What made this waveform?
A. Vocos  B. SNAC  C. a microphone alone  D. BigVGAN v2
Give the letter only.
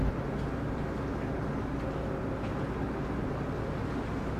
C